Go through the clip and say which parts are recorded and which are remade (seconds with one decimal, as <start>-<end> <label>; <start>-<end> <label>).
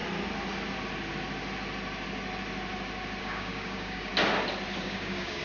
0.0-3.2 recorded; 3.2-4.1 remade; 4.1-4.8 recorded; 4.8-5.4 remade